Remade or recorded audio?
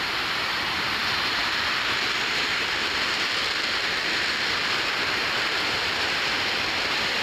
remade